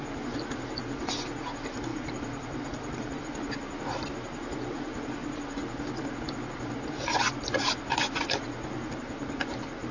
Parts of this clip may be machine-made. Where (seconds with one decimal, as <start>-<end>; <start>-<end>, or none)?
1.9-3.2